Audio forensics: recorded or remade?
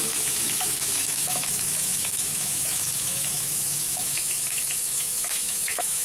remade